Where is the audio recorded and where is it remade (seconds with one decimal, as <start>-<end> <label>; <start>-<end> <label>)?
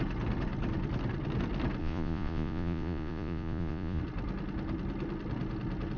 0.0-1.8 recorded; 1.8-4.0 remade; 4.0-6.0 recorded